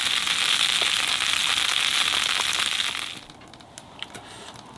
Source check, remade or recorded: recorded